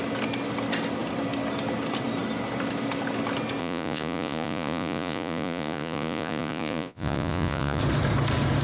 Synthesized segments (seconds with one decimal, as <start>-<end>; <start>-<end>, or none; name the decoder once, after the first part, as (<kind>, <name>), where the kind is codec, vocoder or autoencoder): 3.6-7.8 (vocoder, Vocos)